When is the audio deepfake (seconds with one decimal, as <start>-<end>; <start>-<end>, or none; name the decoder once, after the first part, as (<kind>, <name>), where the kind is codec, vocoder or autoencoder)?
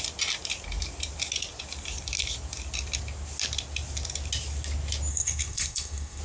5.1-6.2 (codec, SNAC)